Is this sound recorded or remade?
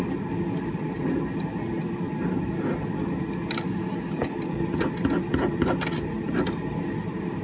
recorded